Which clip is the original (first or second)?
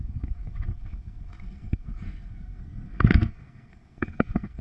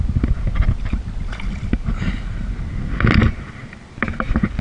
second